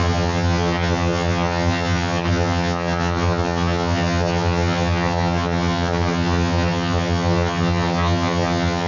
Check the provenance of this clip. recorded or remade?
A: remade